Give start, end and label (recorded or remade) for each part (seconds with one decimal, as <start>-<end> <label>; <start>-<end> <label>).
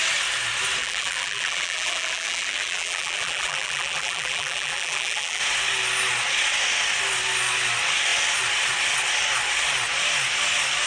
0.0-0.8 recorded; 0.8-5.4 remade; 5.4-10.9 recorded